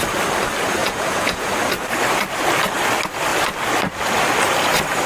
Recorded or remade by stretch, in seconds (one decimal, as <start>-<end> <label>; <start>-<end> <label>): 0.0-0.8 recorded; 0.8-1.5 remade; 1.5-5.1 recorded